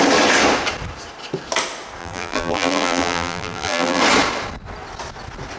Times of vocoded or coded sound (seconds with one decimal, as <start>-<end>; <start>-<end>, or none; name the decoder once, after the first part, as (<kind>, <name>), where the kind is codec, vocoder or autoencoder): 2.0-4.0 (vocoder, BigVGAN v2)